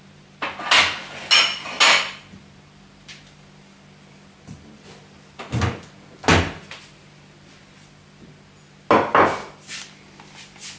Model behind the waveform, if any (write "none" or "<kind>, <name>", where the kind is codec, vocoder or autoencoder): none